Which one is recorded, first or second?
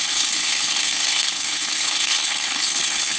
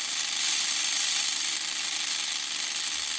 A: second